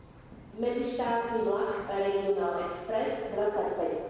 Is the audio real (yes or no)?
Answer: yes